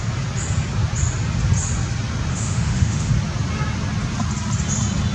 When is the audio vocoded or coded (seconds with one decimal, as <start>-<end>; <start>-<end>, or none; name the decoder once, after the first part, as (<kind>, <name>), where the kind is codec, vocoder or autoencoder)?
2.3-3.1 (autoencoder, DAC-VAE)

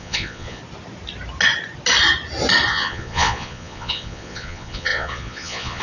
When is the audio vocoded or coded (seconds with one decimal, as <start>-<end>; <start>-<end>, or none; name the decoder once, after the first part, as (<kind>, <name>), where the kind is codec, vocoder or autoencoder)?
0.0-0.6 (vocoder, Vocos); 2.7-5.8

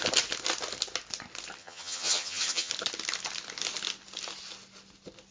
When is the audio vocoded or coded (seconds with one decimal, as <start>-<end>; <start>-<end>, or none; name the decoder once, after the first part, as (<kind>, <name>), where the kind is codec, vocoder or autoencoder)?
1.6-2.7 (vocoder, HiFi-GAN)

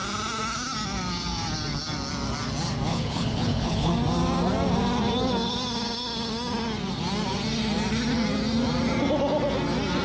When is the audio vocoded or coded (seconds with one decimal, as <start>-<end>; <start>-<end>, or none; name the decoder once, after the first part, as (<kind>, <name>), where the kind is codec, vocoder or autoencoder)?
2.9-3.9 (codec, HILCodec)

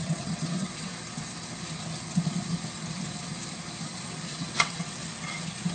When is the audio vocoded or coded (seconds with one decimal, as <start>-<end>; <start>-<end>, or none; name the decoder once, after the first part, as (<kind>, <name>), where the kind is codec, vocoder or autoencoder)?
0.0-0.9 (vocoder, WaveNeXt); 4.3-5.0

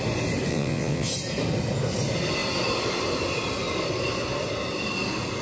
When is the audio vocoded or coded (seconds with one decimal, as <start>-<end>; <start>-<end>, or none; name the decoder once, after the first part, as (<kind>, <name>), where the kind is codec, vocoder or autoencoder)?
0.5-1.1 (vocoder, WaveNeXt)

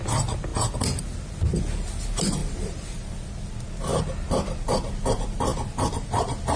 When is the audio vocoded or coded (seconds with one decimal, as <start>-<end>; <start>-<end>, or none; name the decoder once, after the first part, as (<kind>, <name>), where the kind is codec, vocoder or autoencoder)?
2.4-3.1 (vocoder, BigVGAN v2)